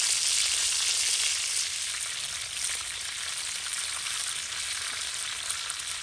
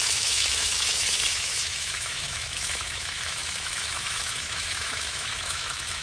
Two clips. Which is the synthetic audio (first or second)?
second